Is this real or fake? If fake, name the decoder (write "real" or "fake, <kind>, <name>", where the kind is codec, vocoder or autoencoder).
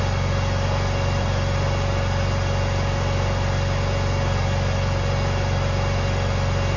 real